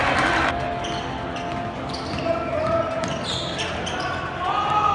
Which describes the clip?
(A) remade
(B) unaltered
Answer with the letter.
B